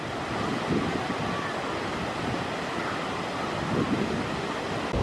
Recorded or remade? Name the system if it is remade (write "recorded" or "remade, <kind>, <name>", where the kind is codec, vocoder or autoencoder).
recorded